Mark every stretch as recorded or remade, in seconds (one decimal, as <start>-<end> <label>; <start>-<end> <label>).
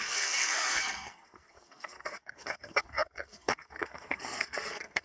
0.0-5.0 remade